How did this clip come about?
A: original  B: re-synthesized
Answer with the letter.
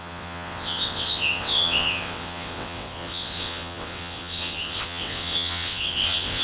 B